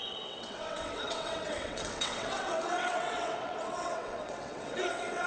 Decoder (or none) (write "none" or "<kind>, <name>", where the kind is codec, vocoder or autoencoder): vocoder, WaveNeXt